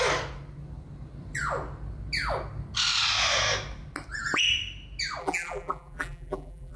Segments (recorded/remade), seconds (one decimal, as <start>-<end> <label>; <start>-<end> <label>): 0.0-5.2 recorded; 5.2-6.8 remade